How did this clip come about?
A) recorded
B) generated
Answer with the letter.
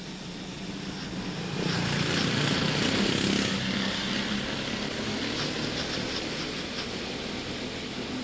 A